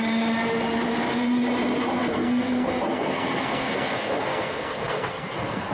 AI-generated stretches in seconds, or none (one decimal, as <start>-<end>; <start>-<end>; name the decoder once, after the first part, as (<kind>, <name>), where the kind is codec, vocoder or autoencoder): 2.1-5.7 (codec, SNAC)